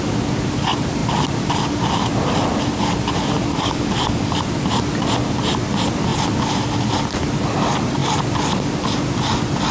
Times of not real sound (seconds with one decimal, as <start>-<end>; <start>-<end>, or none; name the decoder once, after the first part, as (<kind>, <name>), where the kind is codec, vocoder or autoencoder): 3.5-4.4 (codec, DAC)